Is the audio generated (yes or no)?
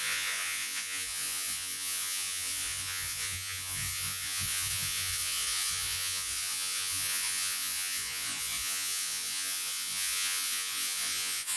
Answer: yes